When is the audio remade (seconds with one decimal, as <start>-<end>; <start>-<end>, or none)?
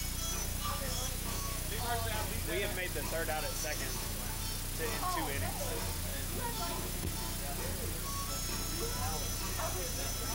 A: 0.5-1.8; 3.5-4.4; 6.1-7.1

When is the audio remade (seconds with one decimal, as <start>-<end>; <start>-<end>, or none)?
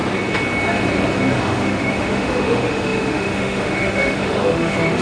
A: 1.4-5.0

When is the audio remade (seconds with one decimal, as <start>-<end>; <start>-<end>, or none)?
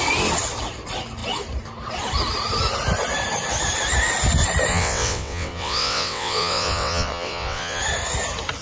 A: 4.7-7.8